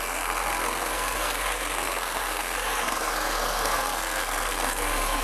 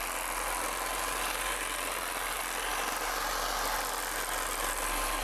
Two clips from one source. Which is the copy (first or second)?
first